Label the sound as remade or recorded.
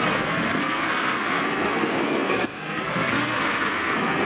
remade